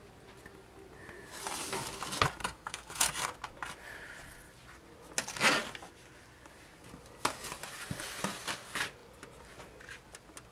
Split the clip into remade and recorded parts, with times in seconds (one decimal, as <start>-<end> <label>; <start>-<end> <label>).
0.0-2.4 recorded; 2.4-3.1 remade; 3.1-10.5 recorded